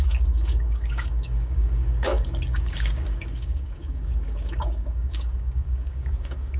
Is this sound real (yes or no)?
no